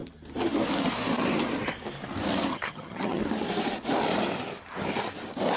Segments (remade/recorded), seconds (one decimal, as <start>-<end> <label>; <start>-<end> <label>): 0.0-2.5 recorded; 2.5-3.2 remade; 3.2-5.6 recorded